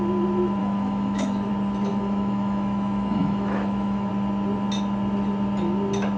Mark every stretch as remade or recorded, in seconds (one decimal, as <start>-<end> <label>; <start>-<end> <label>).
0.0-0.6 recorded; 0.6-1.5 remade; 1.5-1.9 recorded; 1.9-4.1 remade; 4.1-6.2 recorded

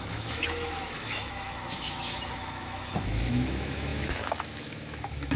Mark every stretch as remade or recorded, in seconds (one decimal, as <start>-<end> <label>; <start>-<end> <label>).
0.0-5.4 remade

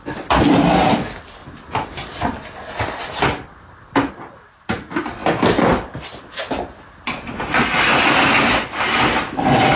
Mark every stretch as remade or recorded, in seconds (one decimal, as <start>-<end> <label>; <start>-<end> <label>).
0.0-9.8 recorded